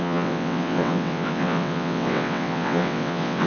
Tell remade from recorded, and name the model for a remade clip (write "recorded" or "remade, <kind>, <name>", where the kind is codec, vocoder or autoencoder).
remade, vocoder, WaveNeXt